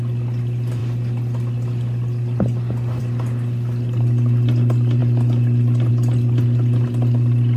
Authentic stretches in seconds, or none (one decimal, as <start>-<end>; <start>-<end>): 0.0-7.6